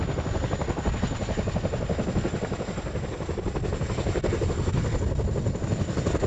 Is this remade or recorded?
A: recorded